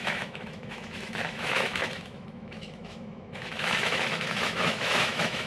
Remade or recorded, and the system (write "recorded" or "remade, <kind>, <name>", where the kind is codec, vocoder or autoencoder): remade, autoencoder, DAC-VAE